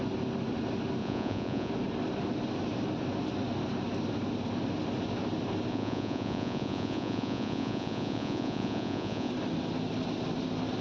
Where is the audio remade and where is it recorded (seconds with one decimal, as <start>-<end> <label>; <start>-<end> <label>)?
0.0-1.0 recorded; 1.0-1.7 remade; 1.7-5.7 recorded; 5.7-9.3 remade; 9.3-10.8 recorded